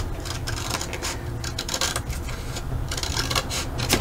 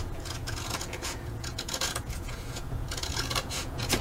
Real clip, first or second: first